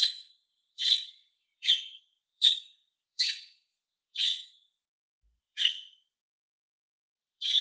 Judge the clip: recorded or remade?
remade